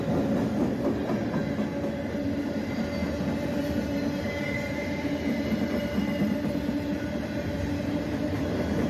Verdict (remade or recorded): recorded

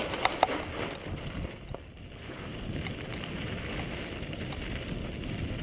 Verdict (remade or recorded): recorded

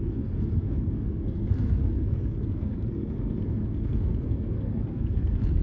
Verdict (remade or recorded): remade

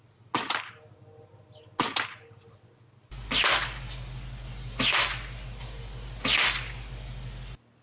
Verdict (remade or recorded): recorded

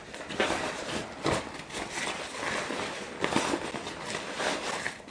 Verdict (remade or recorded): recorded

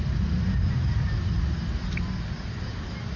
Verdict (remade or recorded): recorded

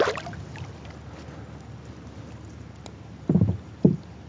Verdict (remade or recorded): recorded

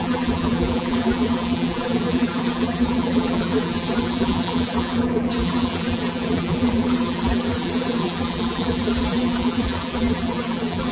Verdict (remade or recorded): remade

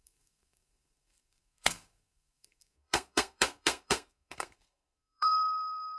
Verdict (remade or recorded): remade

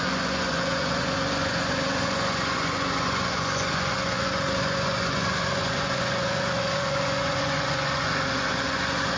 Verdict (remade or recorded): remade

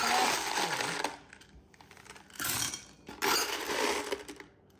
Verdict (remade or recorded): recorded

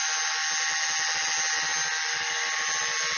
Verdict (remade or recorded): recorded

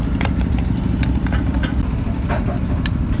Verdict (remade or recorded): remade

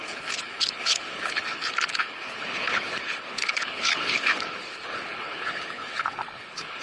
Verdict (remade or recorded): remade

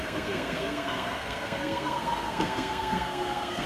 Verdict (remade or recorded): remade